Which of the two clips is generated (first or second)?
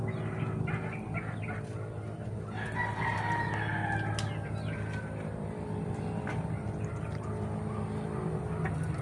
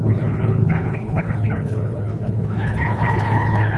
second